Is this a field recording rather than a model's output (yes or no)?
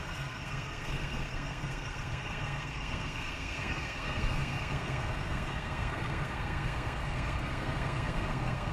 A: no